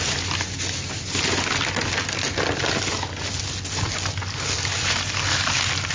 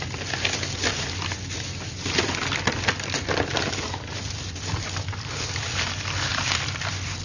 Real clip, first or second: first